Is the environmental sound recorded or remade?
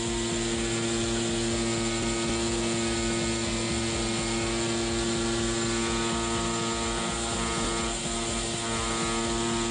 recorded